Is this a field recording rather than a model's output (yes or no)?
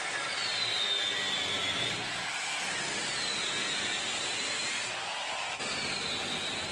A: yes